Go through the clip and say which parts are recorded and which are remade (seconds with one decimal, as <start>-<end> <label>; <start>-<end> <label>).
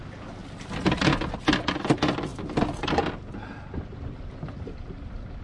0.0-5.4 recorded